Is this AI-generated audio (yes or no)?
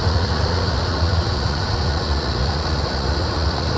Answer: yes